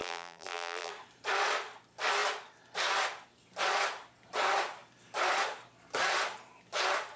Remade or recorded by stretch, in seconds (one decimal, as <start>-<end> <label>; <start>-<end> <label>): 0.0-0.9 remade; 0.9-7.2 recorded